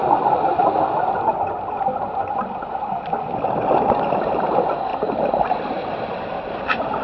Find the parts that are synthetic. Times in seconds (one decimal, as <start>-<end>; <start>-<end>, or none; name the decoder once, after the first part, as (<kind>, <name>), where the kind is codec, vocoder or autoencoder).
1.3-2.7 (vocoder, BigVGAN v2); 4.9-6.4